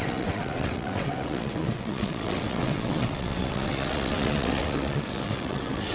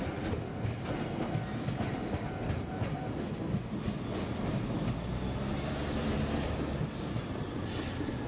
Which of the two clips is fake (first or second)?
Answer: first